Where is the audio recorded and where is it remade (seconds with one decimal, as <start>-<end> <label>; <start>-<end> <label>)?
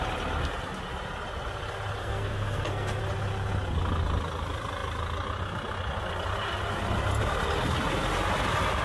0.0-2.0 recorded; 2.0-3.0 remade; 3.0-8.8 recorded